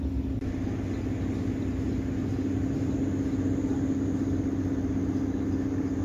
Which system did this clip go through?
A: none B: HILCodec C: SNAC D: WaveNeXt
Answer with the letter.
A